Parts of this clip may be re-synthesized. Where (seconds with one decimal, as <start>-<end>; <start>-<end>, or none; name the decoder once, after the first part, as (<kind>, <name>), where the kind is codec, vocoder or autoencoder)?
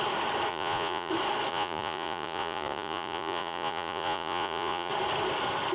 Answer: 0.5-1.1 (vocoder, Vocos); 1.5-4.9